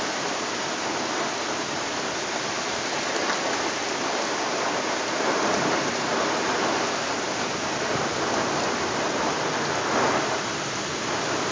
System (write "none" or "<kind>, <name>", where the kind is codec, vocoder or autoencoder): none